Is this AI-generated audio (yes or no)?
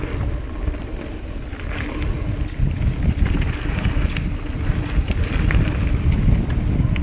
no